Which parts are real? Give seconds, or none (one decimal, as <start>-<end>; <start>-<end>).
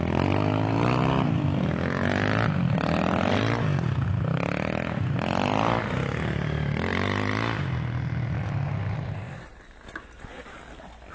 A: 0.0-11.1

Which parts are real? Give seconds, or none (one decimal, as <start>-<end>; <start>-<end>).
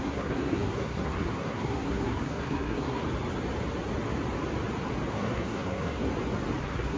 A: 3.0-5.1; 6.1-6.6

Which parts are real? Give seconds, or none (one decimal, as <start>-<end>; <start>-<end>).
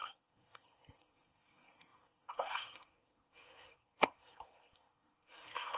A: none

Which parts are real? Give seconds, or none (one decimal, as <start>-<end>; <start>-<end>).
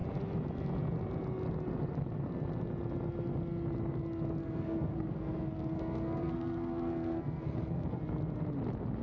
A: 0.0-4.4; 8.0-9.0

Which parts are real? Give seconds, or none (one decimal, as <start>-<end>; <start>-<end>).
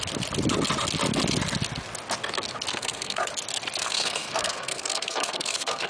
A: 0.0-2.7; 3.3-3.8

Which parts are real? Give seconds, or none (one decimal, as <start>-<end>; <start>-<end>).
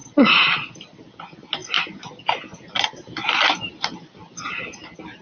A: 0.0-5.2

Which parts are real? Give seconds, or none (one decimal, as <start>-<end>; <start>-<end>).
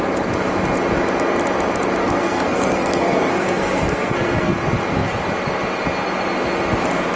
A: 0.0-2.0; 4.5-7.2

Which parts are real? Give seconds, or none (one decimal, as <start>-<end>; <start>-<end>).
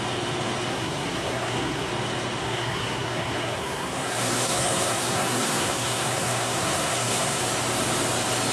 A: 0.0-0.7; 1.9-2.4; 7.4-8.5